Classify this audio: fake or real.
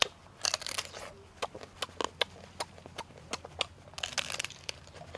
real